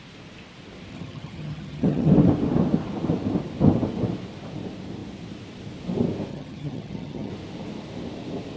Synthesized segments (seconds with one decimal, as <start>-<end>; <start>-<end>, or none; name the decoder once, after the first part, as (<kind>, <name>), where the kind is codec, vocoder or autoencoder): 0.9-2.1 (vocoder, HiFi-GAN); 6.3-7.3